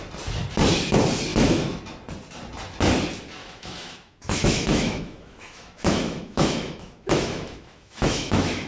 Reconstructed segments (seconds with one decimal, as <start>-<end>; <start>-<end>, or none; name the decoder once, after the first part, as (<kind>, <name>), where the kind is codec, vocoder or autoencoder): 1.3-1.8 (autoencoder, DAC-VAE); 3.4-8.7